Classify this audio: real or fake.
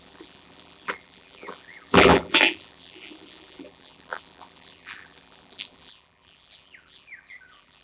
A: fake